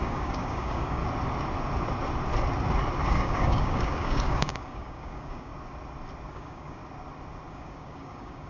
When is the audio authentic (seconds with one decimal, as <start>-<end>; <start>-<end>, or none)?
1.0-3.1; 5.5-6.3; 6.8-7.5